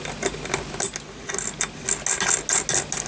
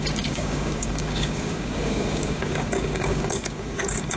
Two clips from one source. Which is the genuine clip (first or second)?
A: first